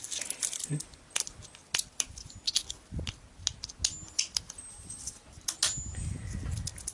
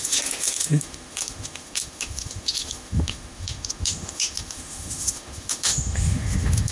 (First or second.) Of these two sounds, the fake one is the second